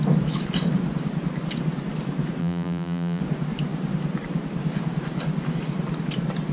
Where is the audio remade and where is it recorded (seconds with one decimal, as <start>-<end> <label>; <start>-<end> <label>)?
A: 0.0-2.4 recorded; 2.4-3.2 remade; 3.2-6.5 recorded